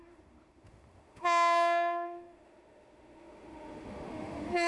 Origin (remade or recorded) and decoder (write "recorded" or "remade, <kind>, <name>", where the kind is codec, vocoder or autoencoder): remade, autoencoder, DAC-VAE